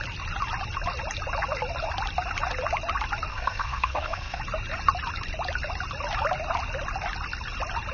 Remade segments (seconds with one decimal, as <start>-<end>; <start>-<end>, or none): 3.3-4.4